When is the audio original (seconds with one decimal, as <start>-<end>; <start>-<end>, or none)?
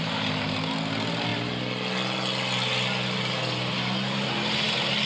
0.0-5.1